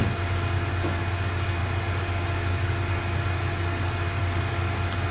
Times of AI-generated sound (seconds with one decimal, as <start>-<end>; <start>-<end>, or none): none